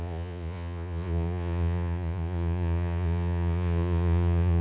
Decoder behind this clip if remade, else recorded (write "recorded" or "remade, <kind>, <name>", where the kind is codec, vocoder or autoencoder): remade, vocoder, Vocos